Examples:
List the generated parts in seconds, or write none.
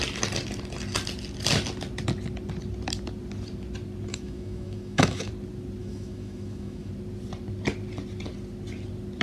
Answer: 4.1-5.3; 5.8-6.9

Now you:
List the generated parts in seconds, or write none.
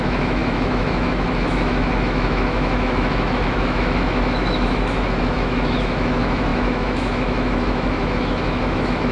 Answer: 0.0-9.1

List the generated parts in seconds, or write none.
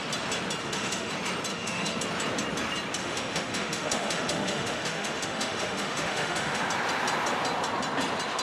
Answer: 0.6-1.1; 1.5-2.0; 3.0-6.6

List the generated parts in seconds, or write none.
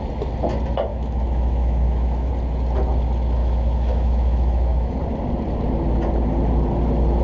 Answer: 0.9-2.3; 3.4-4.9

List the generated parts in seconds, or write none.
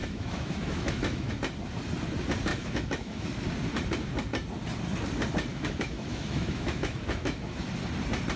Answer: 0.0-1.3; 2.5-3.3; 5.5-7.7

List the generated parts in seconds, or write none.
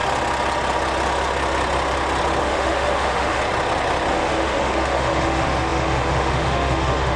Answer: 2.4-3.4; 4.1-7.2